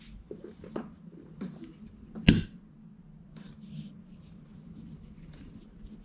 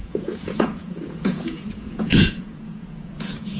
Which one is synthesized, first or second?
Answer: second